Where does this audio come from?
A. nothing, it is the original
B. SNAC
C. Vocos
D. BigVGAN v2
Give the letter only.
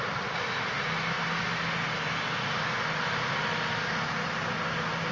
A